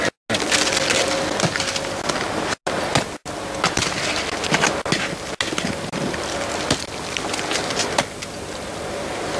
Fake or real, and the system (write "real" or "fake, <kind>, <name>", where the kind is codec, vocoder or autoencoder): real